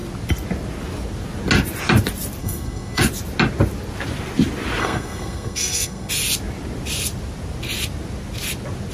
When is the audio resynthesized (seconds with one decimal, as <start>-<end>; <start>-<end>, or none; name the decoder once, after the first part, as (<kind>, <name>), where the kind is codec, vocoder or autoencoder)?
2.4-3.0 (codec, SNAC); 4.8-6.1